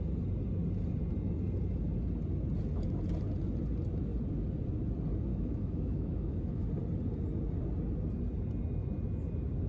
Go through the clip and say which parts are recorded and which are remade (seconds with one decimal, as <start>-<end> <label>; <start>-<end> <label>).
0.0-5.3 recorded; 5.3-6.7 remade; 6.7-9.7 recorded